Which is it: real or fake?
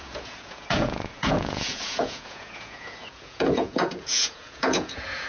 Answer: fake